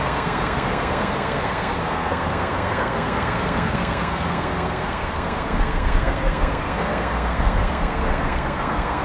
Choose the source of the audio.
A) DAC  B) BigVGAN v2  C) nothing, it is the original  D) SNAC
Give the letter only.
D